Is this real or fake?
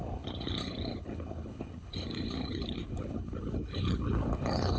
fake